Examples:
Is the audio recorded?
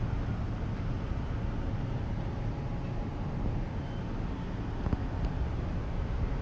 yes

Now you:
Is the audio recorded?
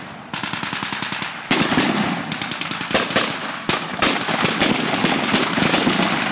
yes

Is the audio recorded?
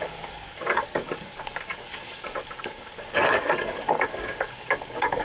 no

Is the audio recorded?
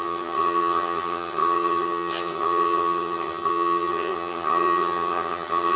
no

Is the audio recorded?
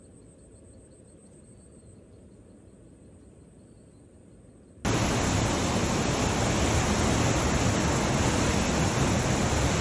yes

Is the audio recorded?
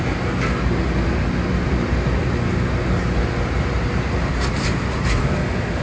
yes